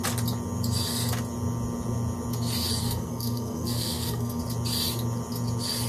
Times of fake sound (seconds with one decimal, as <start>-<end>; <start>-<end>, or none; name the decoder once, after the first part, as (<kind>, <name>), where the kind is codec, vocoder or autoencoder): 2.8-4.4 (codec, SNAC)